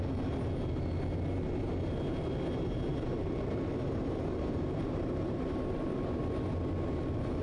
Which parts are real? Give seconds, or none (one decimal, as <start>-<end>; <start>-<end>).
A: 0.0-2.9; 6.2-7.4